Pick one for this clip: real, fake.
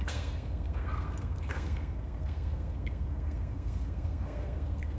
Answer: fake